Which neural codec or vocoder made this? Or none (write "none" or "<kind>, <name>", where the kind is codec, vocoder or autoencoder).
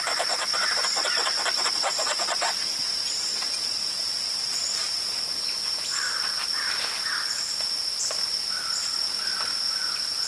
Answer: none